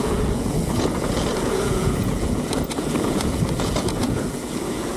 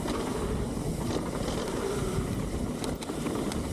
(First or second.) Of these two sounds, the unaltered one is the second